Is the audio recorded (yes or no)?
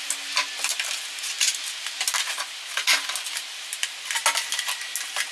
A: yes